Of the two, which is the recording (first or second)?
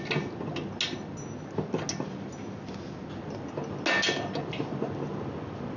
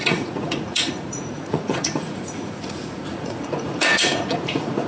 first